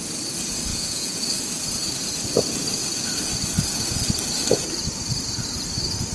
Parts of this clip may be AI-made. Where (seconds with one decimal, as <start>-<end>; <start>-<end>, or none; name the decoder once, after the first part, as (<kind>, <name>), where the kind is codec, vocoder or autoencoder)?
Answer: 0.7-1.2 (vocoder, Vocos)